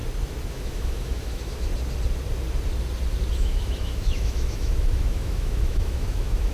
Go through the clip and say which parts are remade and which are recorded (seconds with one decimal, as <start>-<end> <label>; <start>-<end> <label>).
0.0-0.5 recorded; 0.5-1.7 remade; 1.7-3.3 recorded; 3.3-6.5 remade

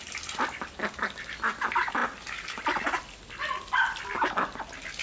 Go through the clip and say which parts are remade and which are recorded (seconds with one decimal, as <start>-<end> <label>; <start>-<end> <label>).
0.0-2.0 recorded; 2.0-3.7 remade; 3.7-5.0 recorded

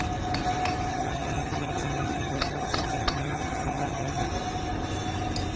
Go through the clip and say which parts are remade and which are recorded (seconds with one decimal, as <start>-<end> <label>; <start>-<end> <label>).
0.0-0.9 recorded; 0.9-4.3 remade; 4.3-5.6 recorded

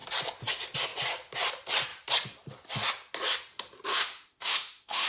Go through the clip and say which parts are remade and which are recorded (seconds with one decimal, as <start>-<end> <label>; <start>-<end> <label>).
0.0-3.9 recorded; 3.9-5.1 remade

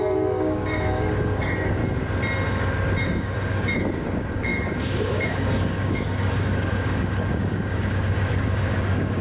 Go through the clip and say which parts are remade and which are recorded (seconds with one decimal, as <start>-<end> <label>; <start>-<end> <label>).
0.0-1.8 remade; 1.8-3.0 recorded; 3.0-9.2 remade

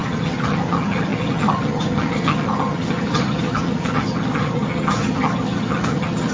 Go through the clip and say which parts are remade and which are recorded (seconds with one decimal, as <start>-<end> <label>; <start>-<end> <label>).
0.0-6.3 remade